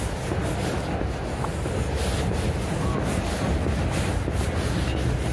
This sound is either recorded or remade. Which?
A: recorded